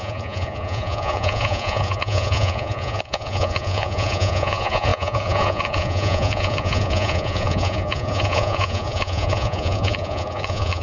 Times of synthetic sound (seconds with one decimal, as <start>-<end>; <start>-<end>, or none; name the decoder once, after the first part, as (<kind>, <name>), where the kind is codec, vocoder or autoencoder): 0.0-10.8 (vocoder, Vocos)